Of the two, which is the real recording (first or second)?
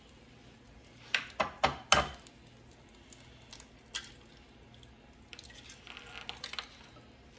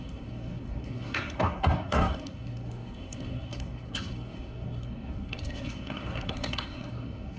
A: first